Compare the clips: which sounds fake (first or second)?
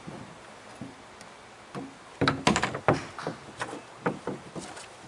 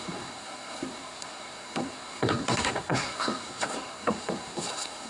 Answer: second